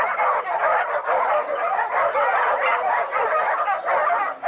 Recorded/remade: recorded